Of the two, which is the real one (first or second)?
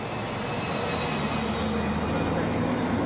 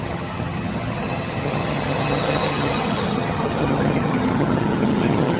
first